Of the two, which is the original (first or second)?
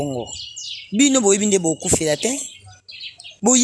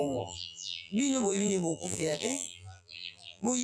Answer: first